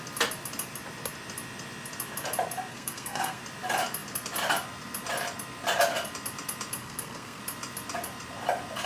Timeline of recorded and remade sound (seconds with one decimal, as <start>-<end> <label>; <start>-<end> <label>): 0.0-2.7 recorded; 2.7-3.4 remade; 3.4-6.8 recorded; 6.8-7.4 remade; 7.4-8.9 recorded

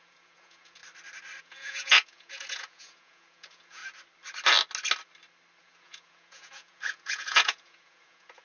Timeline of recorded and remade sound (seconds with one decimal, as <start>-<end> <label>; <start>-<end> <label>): 0.0-0.8 remade; 0.8-1.4 recorded; 1.4-3.8 remade; 3.8-5.6 recorded; 5.6-8.4 remade

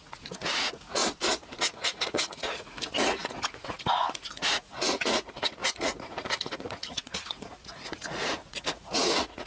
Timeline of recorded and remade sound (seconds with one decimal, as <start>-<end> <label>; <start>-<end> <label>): 0.0-1.0 remade; 1.0-1.6 recorded; 1.6-9.5 remade

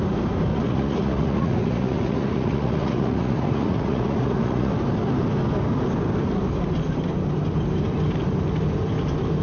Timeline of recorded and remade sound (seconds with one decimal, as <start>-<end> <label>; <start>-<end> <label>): 0.0-0.5 recorded; 0.5-4.7 remade; 4.7-9.4 recorded

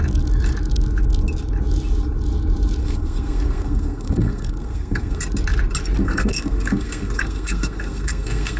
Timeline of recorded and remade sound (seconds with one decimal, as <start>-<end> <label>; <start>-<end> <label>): 0.0-2.8 recorded; 2.8-5.2 remade; 5.2-6.0 recorded; 6.0-8.6 remade

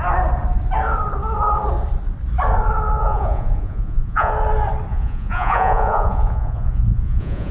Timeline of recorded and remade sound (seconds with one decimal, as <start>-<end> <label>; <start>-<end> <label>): 0.0-3.0 recorded; 3.0-4.3 remade; 4.3-4.9 recorded; 4.9-7.5 remade